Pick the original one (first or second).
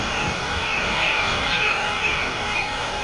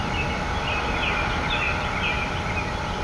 second